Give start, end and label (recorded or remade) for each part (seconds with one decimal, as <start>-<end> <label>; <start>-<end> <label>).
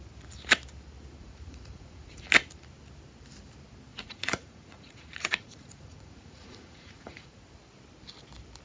0.0-1.2 recorded; 1.2-2.2 remade; 2.2-3.9 recorded; 3.9-7.4 remade; 7.4-8.6 recorded